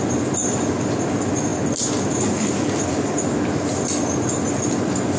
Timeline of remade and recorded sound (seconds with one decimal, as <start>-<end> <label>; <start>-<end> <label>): 0.0-5.2 recorded